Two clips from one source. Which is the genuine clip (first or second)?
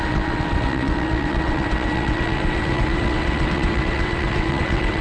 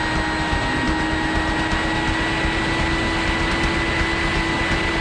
second